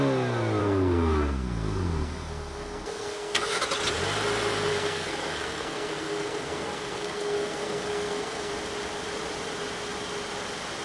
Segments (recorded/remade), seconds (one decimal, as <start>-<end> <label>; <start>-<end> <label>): 0.0-0.6 recorded; 0.6-3.6 remade; 3.6-4.7 recorded; 4.7-8.5 remade; 8.5-10.8 recorded